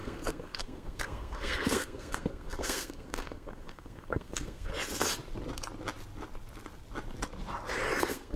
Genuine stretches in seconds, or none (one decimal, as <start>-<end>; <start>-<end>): 4.7-8.0